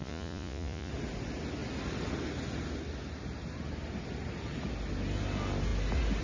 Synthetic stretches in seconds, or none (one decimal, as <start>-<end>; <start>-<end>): 0.0-0.9